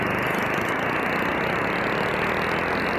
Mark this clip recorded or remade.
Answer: recorded